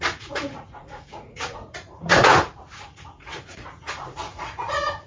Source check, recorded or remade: remade